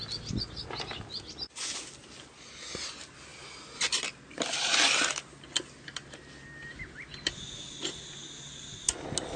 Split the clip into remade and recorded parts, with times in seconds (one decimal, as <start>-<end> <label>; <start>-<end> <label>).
0.0-9.4 recorded